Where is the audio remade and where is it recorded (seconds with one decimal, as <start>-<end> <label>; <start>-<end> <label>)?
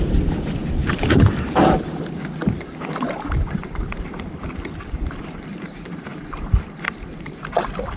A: 0.0-8.0 remade